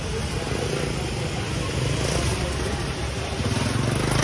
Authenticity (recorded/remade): recorded